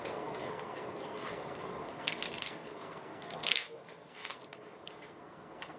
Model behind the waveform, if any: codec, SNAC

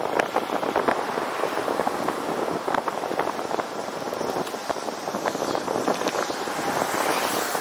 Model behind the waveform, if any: none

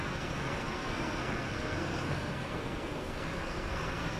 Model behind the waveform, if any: codec, SNAC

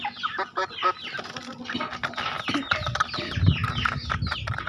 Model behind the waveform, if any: none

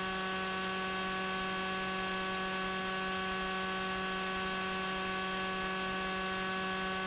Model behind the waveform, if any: none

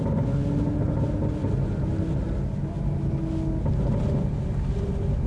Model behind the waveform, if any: none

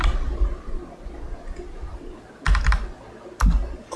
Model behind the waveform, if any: none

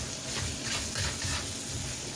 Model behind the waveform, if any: none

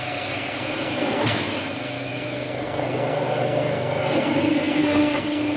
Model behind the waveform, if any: codec, SNAC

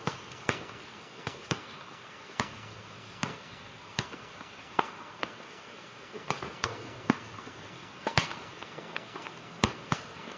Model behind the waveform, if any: codec, SNAC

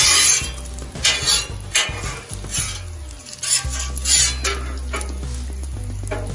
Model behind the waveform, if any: none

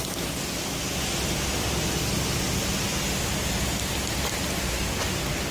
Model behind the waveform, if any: none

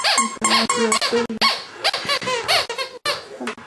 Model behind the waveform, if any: none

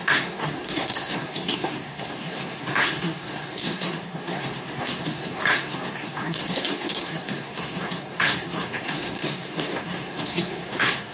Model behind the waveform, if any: codec, SNAC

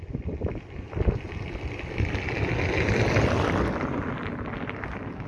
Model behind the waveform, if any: none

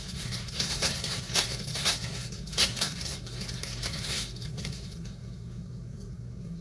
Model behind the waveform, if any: codec, SNAC